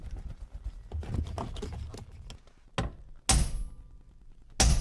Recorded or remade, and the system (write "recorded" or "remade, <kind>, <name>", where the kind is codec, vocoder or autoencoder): recorded